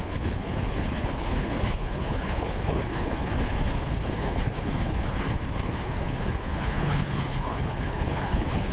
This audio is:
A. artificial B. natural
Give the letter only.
A